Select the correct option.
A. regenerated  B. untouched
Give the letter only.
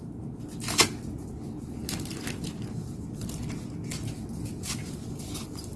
B